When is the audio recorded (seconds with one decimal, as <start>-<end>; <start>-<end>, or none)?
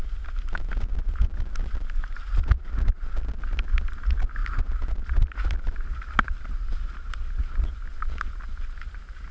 0.0-9.3